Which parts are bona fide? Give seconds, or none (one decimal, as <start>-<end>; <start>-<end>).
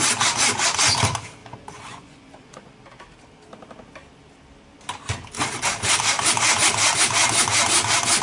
0.0-1.4; 2.7-8.2